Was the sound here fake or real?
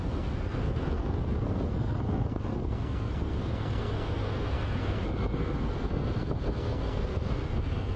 fake